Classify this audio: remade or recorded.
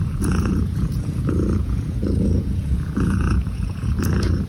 remade